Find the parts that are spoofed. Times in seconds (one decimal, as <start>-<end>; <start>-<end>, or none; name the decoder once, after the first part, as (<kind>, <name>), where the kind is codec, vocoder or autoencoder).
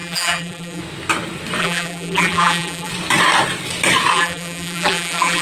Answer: 0.0-0.8 (vocoder, BigVGAN v2); 1.6-2.9; 4.1-5.4